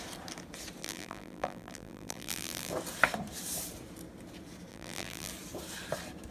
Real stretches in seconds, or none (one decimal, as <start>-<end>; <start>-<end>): 0.0-0.8; 2.7-4.7; 5.3-6.3